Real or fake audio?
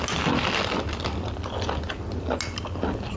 real